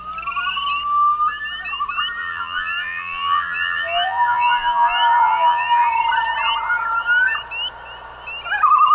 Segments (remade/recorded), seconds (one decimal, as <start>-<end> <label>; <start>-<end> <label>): 0.0-2.2 recorded; 2.2-5.9 remade; 5.9-8.9 recorded